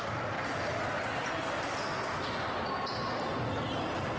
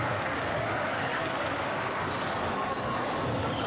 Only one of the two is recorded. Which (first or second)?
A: first